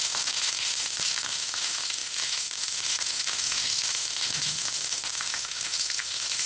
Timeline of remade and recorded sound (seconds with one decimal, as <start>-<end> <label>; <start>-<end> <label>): 0.0-6.5 remade